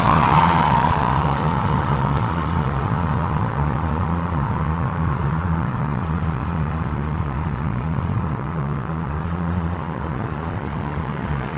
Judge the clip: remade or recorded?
remade